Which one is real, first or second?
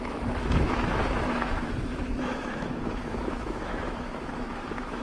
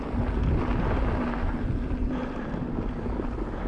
second